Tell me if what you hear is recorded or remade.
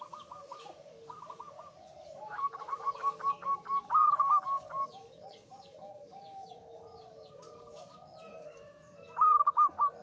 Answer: remade